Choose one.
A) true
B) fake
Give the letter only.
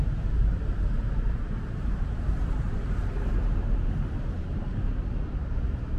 B